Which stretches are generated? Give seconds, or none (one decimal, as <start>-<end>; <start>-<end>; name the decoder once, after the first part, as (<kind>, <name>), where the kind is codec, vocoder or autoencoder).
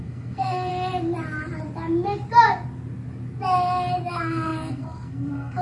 0.0-0.7 (codec, SNAC); 4.1-5.6